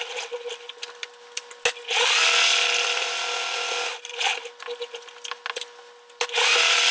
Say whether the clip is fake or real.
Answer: real